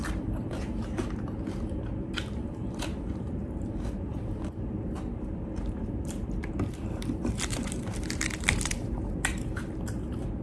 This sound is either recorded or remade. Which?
remade